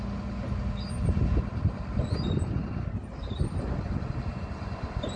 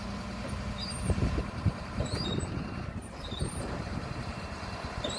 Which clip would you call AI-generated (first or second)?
second